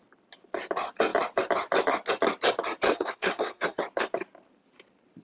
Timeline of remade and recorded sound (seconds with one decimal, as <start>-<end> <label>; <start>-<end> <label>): 0.0-2.9 recorded; 2.9-3.8 remade; 3.8-5.2 recorded

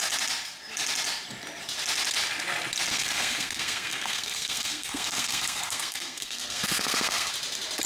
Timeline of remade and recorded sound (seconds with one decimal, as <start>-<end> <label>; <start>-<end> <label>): 0.0-2.9 recorded; 2.9-7.3 remade; 7.3-7.9 recorded

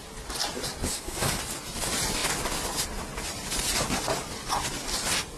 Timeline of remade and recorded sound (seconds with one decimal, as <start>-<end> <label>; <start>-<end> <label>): 0.0-0.9 recorded; 0.9-1.4 remade; 1.4-5.4 recorded

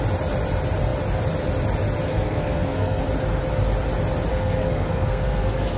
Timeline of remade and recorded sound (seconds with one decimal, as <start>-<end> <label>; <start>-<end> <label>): 0.0-2.1 recorded; 2.1-3.0 remade; 3.0-4.3 recorded; 4.3-5.8 remade

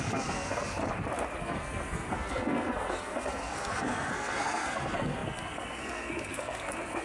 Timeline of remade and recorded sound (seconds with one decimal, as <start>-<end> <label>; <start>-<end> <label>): 0.0-0.8 remade; 0.8-1.4 recorded; 1.4-7.0 remade

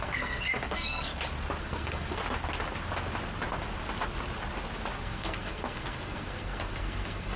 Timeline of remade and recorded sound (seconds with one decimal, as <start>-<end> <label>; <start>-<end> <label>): 0.0-1.1 remade; 1.1-1.6 recorded; 1.6-2.2 remade; 2.2-5.0 recorded; 5.0-7.4 remade

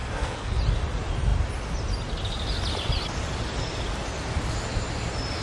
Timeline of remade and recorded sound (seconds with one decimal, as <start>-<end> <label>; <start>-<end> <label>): 0.0-0.6 remade; 0.6-5.4 recorded

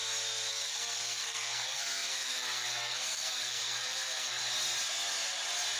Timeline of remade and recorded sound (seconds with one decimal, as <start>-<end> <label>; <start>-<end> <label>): 0.0-0.5 recorded; 0.5-4.4 remade; 4.4-5.8 recorded